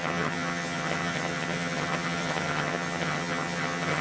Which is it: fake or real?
fake